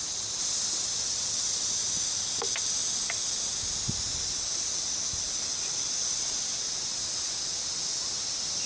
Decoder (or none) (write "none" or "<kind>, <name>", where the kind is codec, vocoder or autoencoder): none